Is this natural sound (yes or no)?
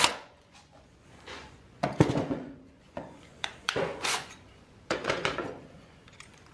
no